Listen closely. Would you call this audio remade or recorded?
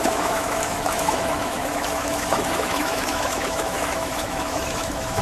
remade